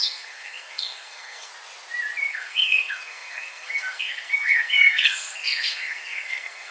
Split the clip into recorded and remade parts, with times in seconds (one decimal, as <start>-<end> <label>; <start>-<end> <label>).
0.0-1.5 remade; 1.5-2.3 recorded; 2.3-6.7 remade